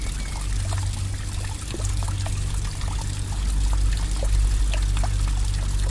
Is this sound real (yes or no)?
yes